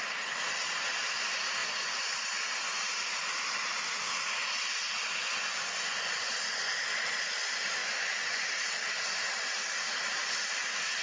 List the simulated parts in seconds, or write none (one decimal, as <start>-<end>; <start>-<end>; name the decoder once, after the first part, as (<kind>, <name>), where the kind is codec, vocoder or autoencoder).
1.6-2.8 (vocoder, Vocos); 5.2-6.3; 7.8-8.4